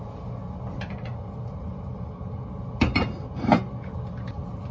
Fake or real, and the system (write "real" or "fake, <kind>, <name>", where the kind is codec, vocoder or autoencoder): real